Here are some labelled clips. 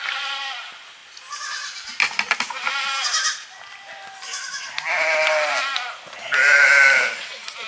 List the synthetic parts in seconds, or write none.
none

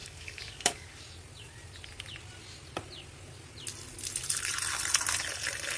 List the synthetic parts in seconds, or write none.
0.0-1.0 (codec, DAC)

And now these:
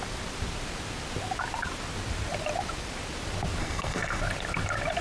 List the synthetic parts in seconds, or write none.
3.6-4.2 (codec, SNAC)

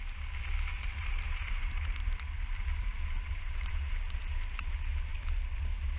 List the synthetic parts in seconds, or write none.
0.7-3.7 (vocoder, BigVGAN v2); 5.1-6.0

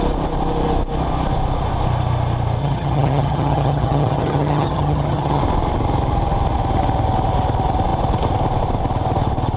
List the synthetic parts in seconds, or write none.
2.6-5.4 (vocoder, HiFi-GAN)